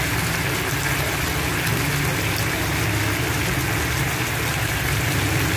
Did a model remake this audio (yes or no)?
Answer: no